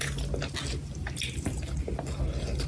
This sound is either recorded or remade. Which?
recorded